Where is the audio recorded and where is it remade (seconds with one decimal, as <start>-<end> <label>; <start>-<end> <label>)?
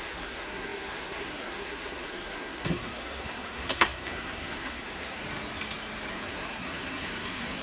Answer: 0.0-5.2 remade; 5.2-6.1 recorded; 6.1-7.6 remade